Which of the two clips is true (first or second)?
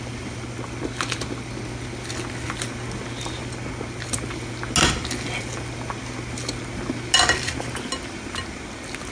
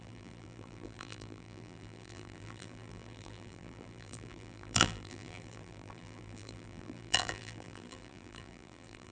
first